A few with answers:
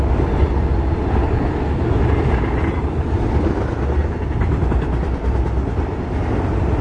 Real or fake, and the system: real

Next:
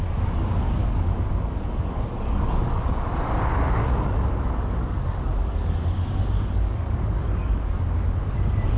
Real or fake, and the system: fake, codec, DAC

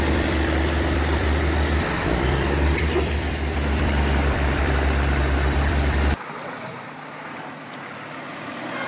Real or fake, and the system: fake, vocoder, BigVGAN v2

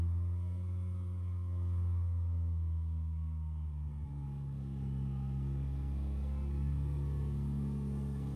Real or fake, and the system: fake, codec, SNAC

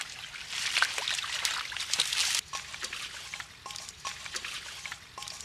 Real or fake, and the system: real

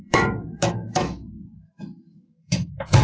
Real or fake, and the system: fake, autoencoder, DAC-VAE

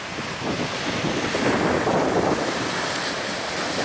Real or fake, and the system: fake, vocoder, BigVGAN v2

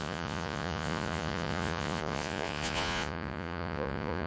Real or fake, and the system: fake, vocoder, Vocos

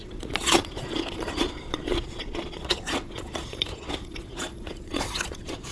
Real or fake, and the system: fake, vocoder, Vocos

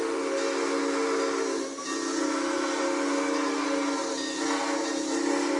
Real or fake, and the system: real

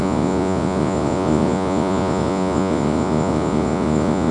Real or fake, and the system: fake, vocoder, Vocos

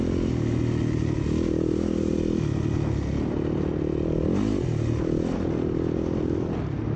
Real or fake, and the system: real